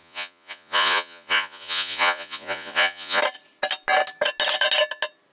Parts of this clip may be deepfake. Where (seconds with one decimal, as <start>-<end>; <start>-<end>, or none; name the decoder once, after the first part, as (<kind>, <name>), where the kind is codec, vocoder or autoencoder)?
0.0-3.2 (vocoder, Vocos)